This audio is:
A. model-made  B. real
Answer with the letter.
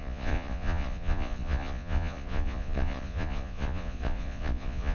A